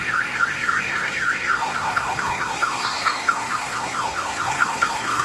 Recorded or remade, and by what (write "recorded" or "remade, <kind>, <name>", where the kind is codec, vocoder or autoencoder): remade, codec, SNAC